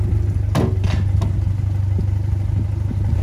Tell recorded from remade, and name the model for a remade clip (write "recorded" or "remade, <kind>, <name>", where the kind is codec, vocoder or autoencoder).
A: recorded